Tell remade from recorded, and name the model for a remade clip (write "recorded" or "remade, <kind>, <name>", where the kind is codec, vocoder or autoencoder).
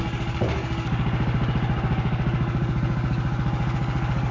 remade, codec, DAC